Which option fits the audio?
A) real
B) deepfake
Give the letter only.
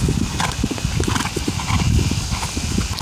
A